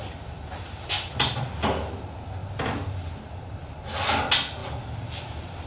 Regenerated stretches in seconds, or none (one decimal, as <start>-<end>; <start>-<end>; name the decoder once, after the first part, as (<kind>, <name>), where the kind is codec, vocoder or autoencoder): 0.0-1.4 (vocoder, BigVGAN v2); 2.4-3.1; 4.6-5.7

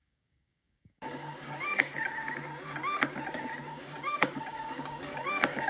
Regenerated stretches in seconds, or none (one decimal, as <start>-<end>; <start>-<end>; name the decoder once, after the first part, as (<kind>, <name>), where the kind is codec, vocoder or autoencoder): 0.0-1.9 (codec, DAC); 3.7-5.7

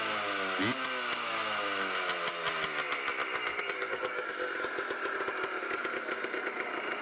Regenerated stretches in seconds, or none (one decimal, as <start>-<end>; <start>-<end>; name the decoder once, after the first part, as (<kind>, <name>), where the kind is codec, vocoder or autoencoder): 3.5-4.3 (codec, DAC)

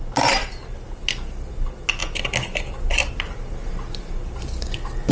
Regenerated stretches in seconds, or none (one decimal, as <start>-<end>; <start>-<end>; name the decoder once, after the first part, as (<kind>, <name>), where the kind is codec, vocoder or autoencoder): none

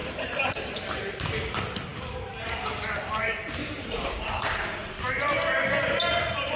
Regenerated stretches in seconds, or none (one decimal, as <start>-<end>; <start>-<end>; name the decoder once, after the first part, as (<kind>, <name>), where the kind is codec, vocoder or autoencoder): 0.0-0.6 (vocoder, BigVGAN v2); 3.3-4.7

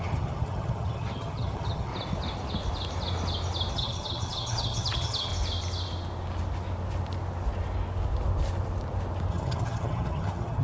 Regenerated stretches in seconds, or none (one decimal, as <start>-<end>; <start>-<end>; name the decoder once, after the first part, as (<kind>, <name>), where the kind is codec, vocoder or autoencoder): 0.0-1.9 (vocoder, HiFi-GAN); 3.7-5.3; 9.3-10.6

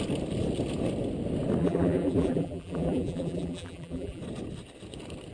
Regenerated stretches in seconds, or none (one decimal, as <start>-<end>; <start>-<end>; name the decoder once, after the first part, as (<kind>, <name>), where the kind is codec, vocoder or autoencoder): 1.6-4.2 (vocoder, BigVGAN v2)

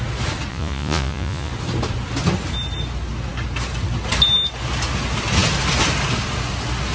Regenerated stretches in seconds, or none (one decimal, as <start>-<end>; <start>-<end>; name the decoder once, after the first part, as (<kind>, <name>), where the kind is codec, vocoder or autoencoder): 0.5-1.5 (vocoder, Vocos)